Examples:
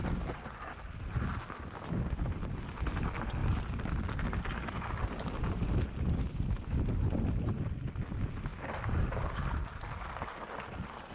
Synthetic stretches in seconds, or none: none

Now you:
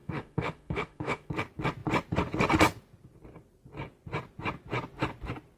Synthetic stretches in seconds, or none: 0.0-1.3 (autoencoder, DAC-VAE)